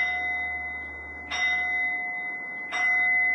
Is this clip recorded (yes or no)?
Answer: yes